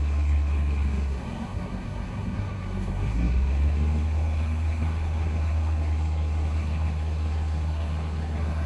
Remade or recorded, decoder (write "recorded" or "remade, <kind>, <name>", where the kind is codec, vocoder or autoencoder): remade, codec, SNAC